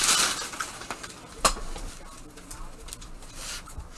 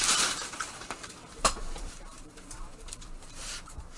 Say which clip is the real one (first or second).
first